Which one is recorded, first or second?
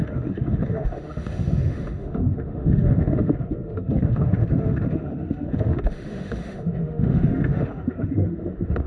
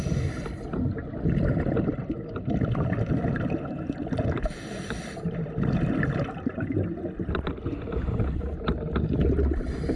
second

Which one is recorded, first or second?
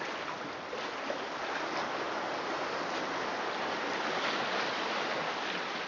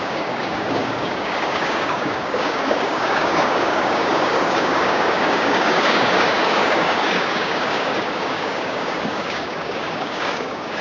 first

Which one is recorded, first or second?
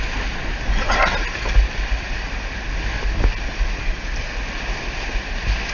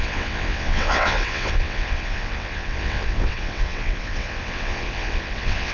first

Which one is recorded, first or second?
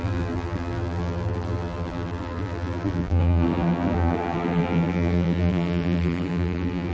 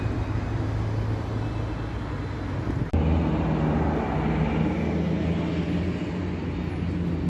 second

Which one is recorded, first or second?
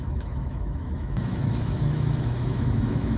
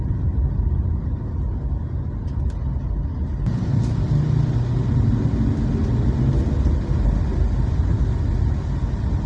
second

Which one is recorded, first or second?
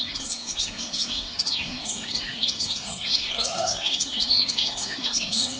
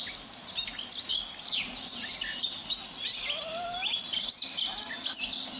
second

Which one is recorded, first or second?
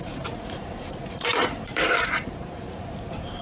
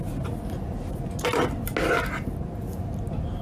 second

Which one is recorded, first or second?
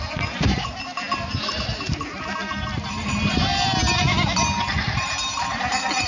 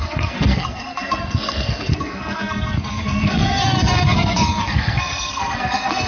first